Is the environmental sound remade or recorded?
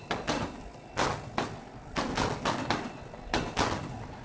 recorded